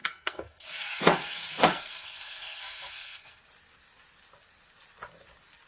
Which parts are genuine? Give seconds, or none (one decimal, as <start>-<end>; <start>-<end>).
3.4-5.7

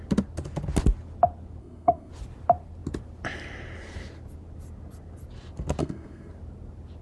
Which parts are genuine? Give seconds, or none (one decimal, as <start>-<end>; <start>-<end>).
0.0-1.6; 2.1-5.8; 6.3-7.0